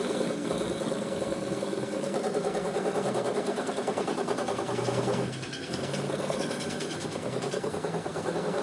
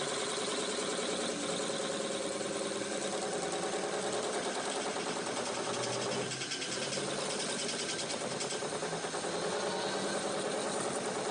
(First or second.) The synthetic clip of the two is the first